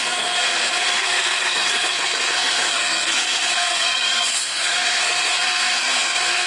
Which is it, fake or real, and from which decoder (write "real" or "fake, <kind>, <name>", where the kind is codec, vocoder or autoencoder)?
fake, codec, SNAC